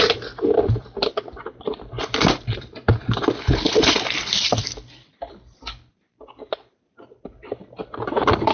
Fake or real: fake